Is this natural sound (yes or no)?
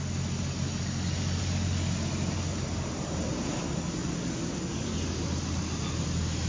yes